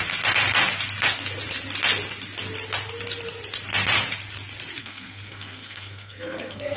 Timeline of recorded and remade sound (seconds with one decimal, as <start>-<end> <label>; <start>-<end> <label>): 0.0-4.8 recorded; 4.8-6.8 remade